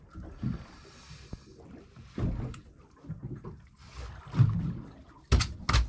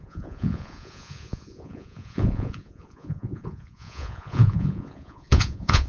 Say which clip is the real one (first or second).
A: first